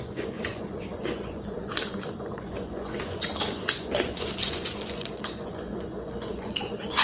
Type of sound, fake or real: fake